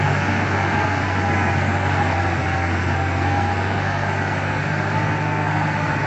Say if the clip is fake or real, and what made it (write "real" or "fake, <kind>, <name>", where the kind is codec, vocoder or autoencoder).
fake, codec, SNAC